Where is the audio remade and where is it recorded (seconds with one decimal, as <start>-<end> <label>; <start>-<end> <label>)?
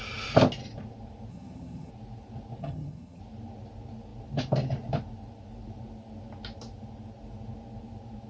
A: 0.0-1.3 recorded; 1.3-1.9 remade; 1.9-2.6 recorded; 2.6-3.2 remade; 3.2-8.3 recorded